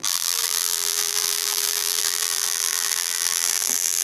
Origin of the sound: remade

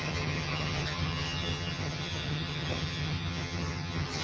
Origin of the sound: remade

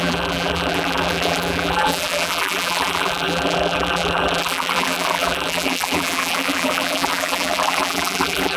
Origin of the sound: remade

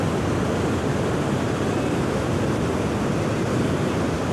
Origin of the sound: recorded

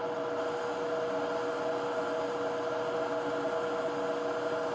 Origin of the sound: recorded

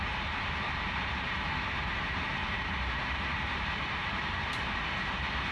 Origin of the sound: remade